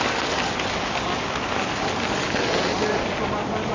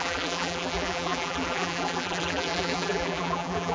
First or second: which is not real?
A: second